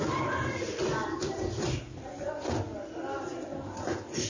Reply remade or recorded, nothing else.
recorded